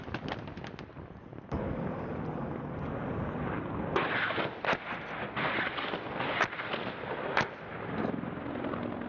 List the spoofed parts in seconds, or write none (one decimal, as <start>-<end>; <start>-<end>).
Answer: none